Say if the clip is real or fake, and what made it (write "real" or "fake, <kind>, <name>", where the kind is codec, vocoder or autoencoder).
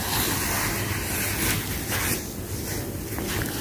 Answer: real